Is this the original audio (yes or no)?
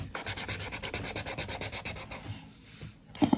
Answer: yes